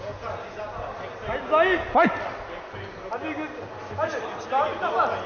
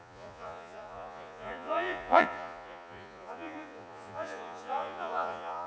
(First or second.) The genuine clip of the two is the first